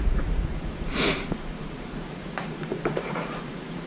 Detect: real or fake fake